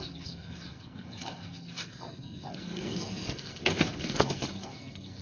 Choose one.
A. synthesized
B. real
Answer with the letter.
A